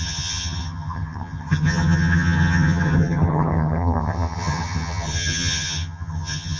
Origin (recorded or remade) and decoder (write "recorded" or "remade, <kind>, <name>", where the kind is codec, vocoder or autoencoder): remade, vocoder, HiFi-GAN